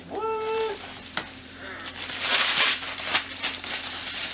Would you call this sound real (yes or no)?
no